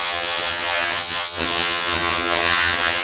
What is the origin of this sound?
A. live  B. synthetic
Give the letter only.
B